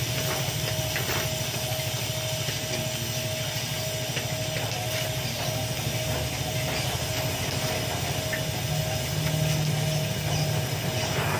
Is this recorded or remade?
recorded